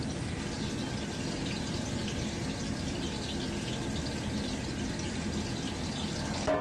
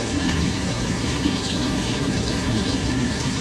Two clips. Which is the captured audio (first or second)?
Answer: first